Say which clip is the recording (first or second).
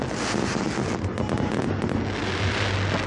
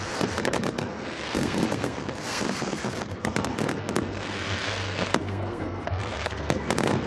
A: first